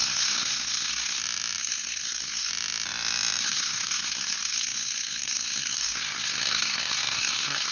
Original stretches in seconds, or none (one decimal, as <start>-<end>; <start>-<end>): 1.2-1.6; 2.5-3.4